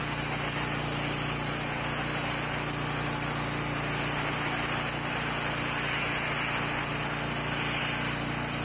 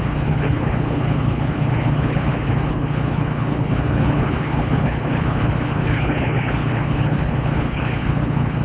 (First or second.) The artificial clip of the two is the second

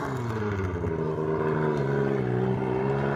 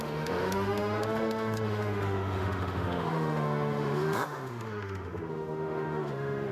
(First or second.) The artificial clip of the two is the second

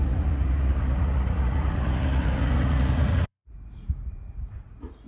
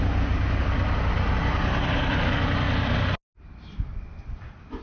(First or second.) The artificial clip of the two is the first